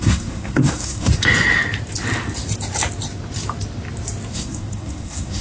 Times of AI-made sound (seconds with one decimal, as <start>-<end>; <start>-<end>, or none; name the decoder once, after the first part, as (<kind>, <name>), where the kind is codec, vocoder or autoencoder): 0.0-1.1 (codec, SNAC); 4.3-5.4